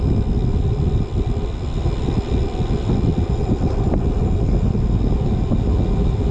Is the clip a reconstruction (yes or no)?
no